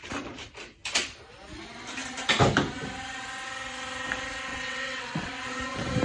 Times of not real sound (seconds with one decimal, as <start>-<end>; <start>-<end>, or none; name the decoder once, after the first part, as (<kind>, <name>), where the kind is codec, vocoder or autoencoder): 4.5-5.3 (vocoder, WaveNeXt)